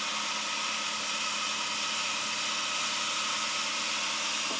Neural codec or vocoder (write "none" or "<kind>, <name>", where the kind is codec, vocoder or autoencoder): none